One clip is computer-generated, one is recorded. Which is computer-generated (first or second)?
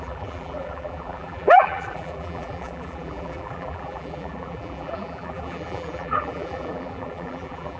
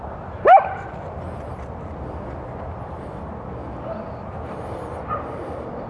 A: first